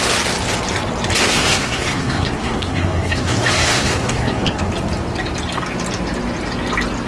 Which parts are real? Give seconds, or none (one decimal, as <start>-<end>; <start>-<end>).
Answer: 0.0-1.3; 4.6-7.1